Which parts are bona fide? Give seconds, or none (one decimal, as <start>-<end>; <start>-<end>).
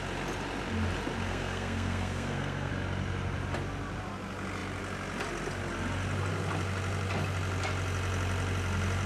0.0-1.3; 2.7-9.1